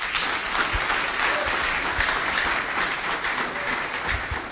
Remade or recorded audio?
recorded